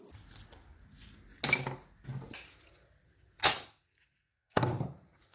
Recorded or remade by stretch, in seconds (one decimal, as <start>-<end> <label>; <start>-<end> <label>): 0.0-4.2 recorded; 4.2-4.7 remade; 4.7-5.3 recorded